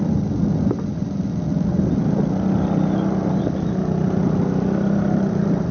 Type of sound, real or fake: real